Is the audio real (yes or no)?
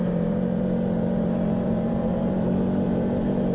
no